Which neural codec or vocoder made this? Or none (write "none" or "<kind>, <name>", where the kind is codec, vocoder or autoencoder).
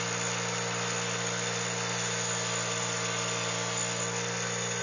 none